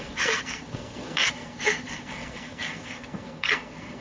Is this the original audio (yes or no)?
no